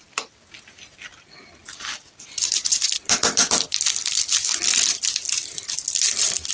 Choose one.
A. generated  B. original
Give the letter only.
B